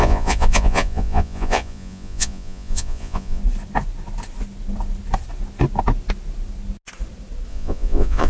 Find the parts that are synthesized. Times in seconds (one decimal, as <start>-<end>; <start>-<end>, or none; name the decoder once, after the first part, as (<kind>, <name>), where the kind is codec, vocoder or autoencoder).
0.0-3.4 (vocoder, Vocos); 7.5-8.3